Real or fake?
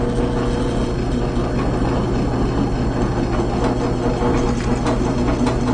real